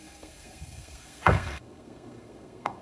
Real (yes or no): no